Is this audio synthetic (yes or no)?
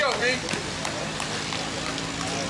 no